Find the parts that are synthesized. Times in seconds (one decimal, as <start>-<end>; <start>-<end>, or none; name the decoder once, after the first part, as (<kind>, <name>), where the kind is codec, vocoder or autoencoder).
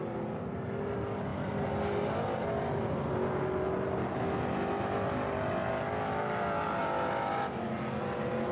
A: none